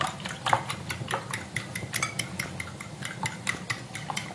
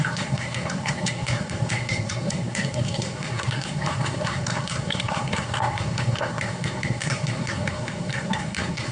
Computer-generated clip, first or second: second